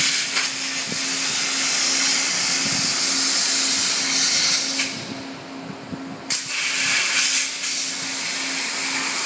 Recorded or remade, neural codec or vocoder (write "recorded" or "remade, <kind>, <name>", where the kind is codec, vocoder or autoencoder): recorded